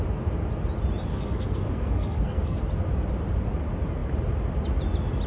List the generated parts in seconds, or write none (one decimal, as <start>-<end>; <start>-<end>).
1.1-2.6